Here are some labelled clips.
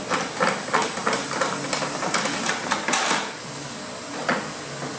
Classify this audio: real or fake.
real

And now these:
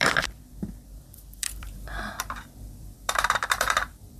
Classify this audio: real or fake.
fake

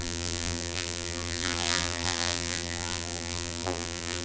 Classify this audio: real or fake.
fake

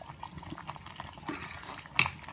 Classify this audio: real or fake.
real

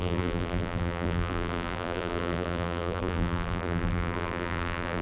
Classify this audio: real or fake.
fake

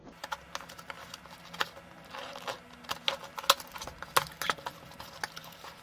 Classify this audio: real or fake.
real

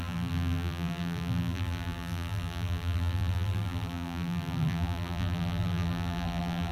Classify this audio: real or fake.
fake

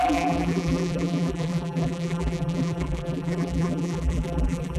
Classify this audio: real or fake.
fake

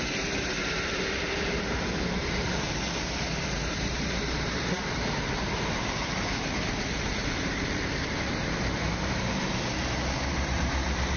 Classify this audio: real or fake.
fake